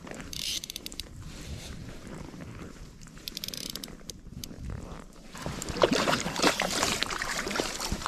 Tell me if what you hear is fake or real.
fake